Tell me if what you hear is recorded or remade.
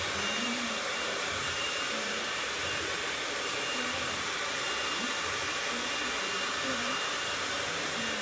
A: remade